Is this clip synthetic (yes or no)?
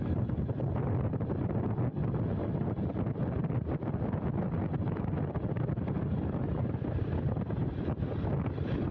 no